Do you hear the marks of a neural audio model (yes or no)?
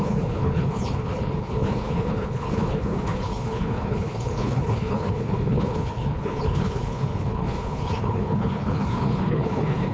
yes